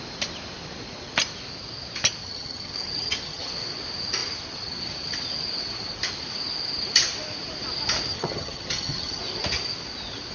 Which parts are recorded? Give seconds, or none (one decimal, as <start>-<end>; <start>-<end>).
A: 0.0-2.2; 3.5-8.1; 9.2-10.3